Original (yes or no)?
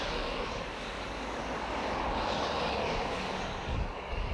no